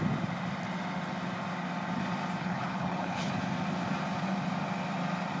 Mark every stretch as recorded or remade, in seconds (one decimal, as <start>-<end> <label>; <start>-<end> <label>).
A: 0.0-2.4 recorded; 2.4-3.3 remade; 3.3-5.4 recorded